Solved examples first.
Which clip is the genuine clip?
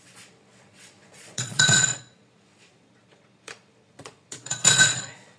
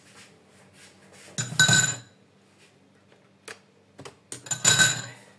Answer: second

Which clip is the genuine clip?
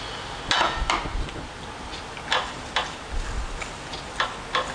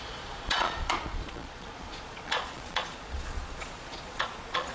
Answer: first